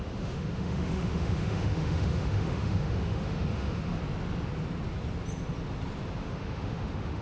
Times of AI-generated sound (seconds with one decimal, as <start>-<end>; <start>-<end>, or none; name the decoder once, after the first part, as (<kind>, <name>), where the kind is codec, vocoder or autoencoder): 0.0-4.0 (autoencoder, DAC-VAE); 6.2-7.2